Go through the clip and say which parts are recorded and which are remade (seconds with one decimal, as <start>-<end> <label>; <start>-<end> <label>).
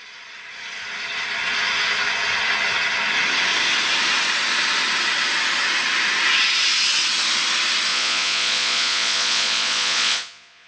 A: 0.0-7.9 recorded; 7.9-10.7 remade